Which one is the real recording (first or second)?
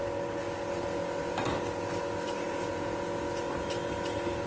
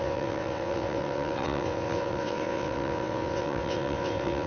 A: first